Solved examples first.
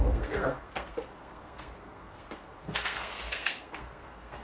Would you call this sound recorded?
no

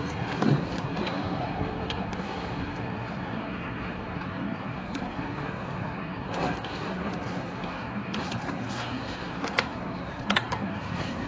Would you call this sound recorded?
no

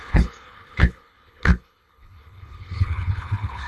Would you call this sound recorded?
no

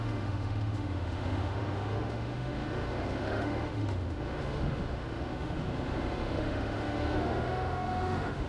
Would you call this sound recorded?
no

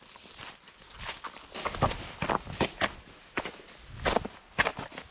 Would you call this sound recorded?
yes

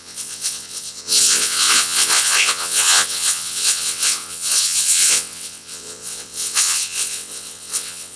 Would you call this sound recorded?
no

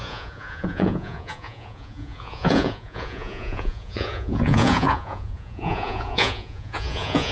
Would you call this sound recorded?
no